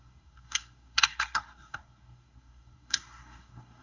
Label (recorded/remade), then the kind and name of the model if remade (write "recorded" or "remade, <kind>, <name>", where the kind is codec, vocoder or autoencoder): remade, codec, SNAC